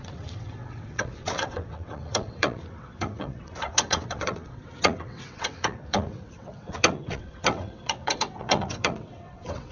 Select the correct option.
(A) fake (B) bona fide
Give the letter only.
A